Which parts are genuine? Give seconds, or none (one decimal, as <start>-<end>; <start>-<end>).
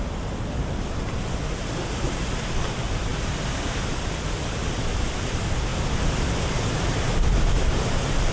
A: 0.0-8.3